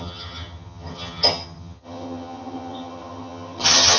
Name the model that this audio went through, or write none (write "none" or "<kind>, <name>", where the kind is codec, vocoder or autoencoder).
vocoder, HiFi-GAN